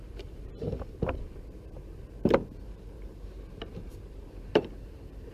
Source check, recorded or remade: remade